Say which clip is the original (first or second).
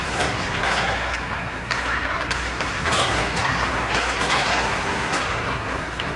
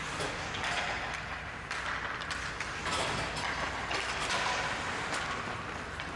second